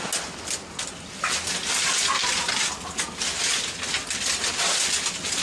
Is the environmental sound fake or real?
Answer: real